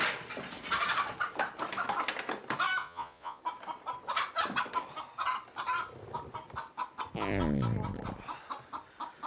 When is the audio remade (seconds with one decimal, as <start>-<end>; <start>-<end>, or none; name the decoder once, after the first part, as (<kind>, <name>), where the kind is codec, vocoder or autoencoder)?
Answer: 2.8-3.4 (vocoder, Vocos)